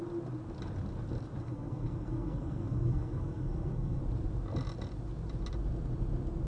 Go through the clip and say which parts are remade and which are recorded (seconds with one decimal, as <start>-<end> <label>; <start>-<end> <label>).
0.0-1.4 recorded; 1.4-4.0 remade; 4.0-6.5 recorded